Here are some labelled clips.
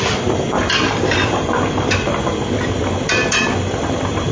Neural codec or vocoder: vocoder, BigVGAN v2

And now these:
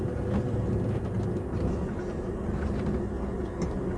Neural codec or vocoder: none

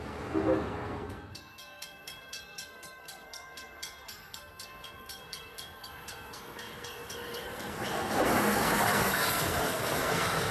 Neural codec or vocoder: codec, SNAC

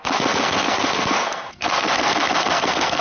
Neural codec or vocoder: codec, SNAC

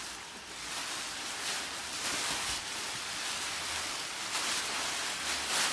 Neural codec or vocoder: vocoder, BigVGAN v2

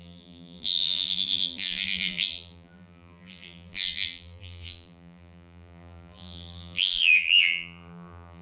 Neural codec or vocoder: vocoder, BigVGAN v2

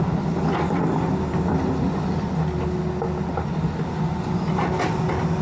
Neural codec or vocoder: none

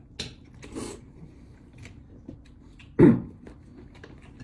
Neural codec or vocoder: none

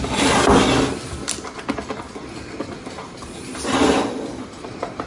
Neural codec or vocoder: none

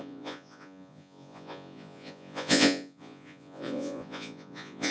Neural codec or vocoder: vocoder, Vocos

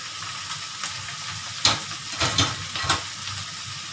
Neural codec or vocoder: none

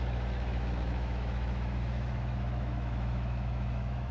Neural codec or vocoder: autoencoder, DAC-VAE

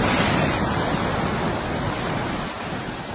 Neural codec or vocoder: none